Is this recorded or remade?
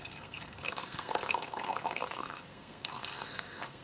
remade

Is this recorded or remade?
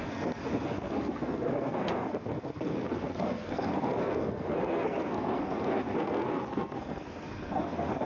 remade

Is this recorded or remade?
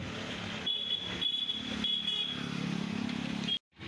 recorded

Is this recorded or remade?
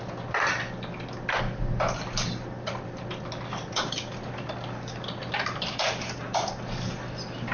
recorded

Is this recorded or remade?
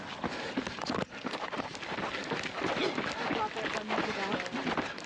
recorded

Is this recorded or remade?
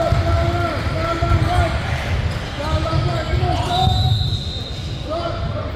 recorded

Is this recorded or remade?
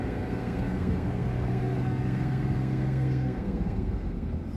remade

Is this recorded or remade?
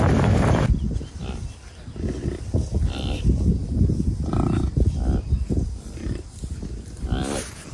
recorded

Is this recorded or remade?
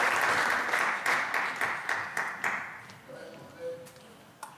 recorded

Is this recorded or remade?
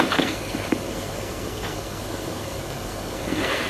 remade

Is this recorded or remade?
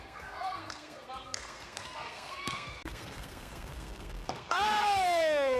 remade